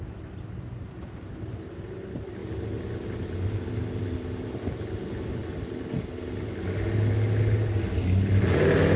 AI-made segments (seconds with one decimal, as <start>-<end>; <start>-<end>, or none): none